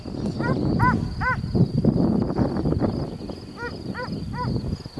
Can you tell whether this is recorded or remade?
recorded